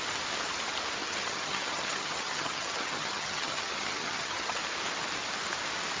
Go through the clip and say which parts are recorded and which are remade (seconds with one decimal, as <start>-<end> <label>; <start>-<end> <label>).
0.0-1.0 recorded; 1.0-4.6 remade; 4.6-6.0 recorded